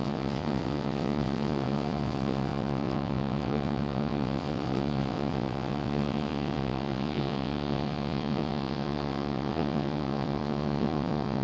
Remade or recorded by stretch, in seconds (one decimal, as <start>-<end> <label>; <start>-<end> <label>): 0.0-11.4 remade